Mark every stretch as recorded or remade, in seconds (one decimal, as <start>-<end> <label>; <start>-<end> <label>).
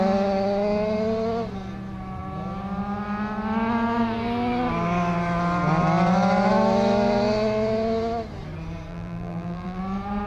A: 0.0-8.9 recorded; 8.9-9.8 remade; 9.8-10.3 recorded